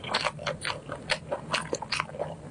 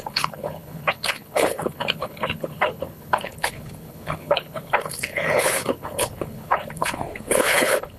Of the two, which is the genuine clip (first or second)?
first